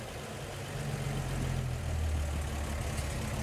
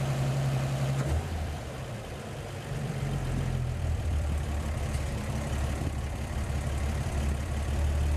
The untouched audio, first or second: first